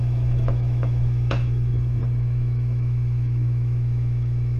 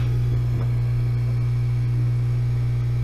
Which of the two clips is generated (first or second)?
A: first